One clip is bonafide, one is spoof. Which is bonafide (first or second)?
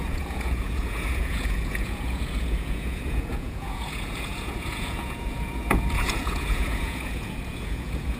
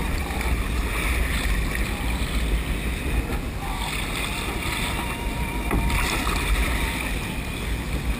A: second